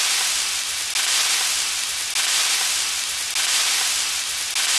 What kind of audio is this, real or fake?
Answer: real